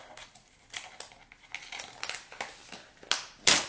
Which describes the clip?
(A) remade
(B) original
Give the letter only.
B